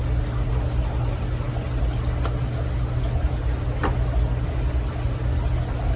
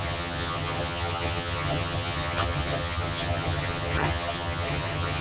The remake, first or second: second